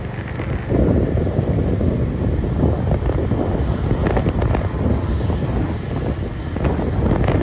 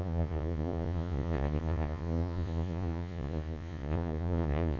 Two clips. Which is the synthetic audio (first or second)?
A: second